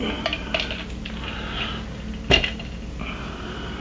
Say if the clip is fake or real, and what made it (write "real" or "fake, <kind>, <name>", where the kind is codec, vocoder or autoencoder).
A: real